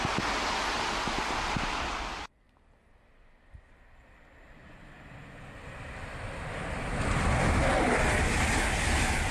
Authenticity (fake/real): real